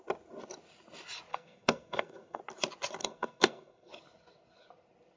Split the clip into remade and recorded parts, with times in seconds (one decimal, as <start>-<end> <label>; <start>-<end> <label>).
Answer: 0.0-1.3 recorded; 1.3-2.4 remade; 2.4-3.0 recorded; 3.0-3.9 remade; 3.9-5.2 recorded